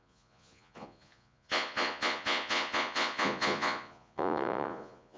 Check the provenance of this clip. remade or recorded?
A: remade